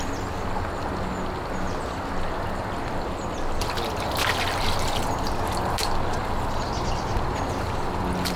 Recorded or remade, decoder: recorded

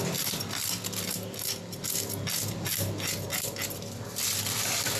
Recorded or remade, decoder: recorded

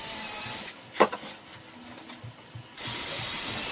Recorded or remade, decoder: recorded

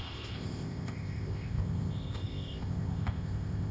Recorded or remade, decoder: remade, codec, ZipCodec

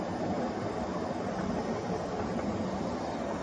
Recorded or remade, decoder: recorded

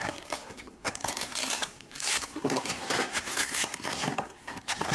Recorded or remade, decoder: remade, codec, SNAC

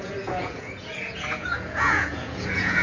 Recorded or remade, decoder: remade, vocoder, Vocos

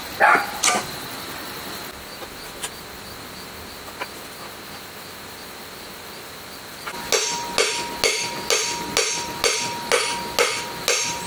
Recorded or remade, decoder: recorded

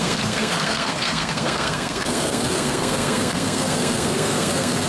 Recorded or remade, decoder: remade, codec, SNAC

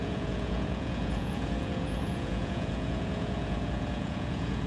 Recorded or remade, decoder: remade, vocoder, Vocos